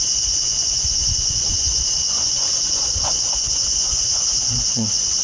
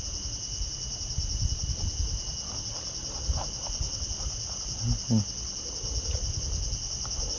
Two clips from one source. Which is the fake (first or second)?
first